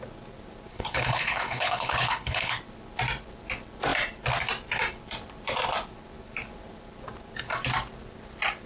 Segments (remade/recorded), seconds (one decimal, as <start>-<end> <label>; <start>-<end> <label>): 0.0-0.7 recorded; 0.7-2.6 remade; 2.6-8.7 recorded